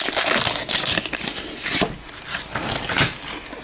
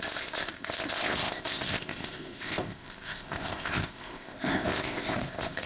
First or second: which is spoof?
second